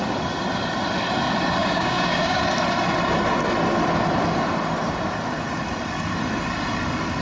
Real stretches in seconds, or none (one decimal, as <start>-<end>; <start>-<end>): 0.0-1.6; 2.4-7.2